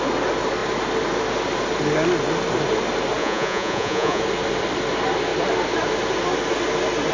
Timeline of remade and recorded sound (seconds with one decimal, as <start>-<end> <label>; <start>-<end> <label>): 0.0-3.2 recorded; 3.2-4.2 remade; 4.2-7.1 recorded